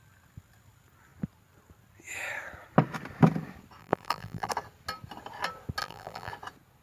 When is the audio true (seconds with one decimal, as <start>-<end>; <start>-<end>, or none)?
0.0-3.8; 4.5-5.8; 6.3-6.8